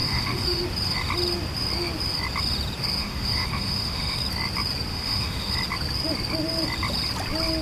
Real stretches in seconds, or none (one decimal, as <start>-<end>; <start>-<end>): 0.6-3.0; 4.2-4.9; 5.5-7.6